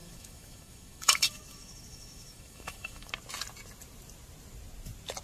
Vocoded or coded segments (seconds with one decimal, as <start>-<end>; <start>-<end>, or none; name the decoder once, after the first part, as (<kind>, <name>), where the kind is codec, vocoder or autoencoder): 0.0-3.1 (autoencoder, DAC-VAE)